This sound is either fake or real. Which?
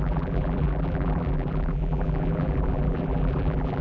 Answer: fake